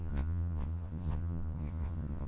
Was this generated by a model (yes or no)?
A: yes